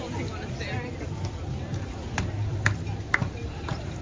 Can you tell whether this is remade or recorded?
recorded